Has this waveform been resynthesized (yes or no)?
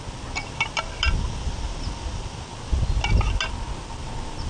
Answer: no